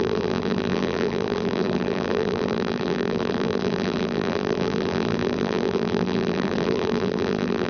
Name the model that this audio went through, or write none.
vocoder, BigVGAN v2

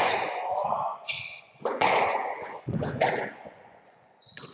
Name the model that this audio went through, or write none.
vocoder, Vocos